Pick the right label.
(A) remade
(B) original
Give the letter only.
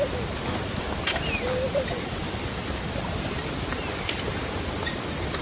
B